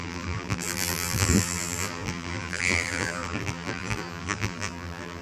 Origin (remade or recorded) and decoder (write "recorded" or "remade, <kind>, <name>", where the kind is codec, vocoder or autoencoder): remade, vocoder, BigVGAN v2